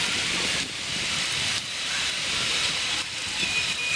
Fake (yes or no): yes